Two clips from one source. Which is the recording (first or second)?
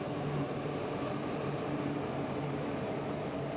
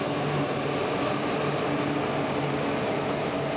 second